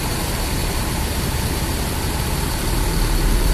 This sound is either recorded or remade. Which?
remade